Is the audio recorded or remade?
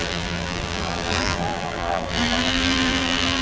remade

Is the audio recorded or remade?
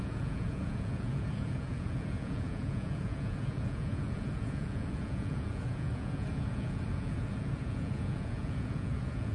remade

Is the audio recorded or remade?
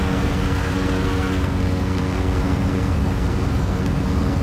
remade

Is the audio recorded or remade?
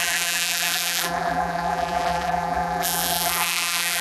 remade